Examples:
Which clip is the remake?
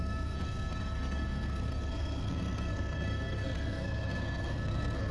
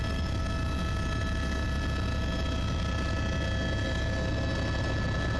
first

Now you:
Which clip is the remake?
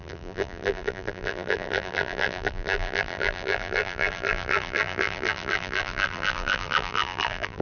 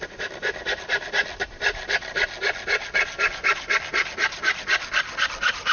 first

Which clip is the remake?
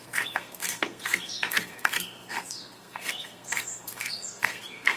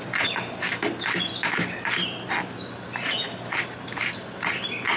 first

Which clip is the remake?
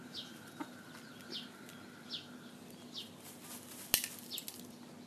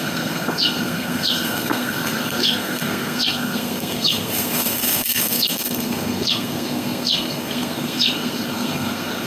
second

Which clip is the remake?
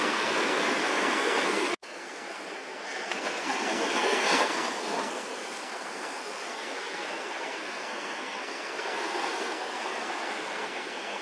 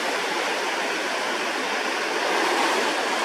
first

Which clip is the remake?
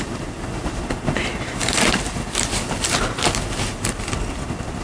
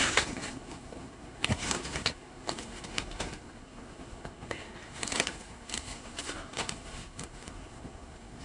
second